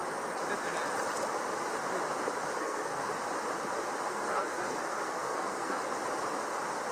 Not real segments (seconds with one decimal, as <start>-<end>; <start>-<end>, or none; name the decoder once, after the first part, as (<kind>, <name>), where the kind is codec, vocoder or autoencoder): 2.6-3.1 (codec, SNAC); 4.1-5.8